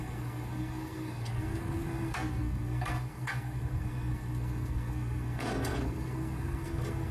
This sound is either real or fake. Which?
fake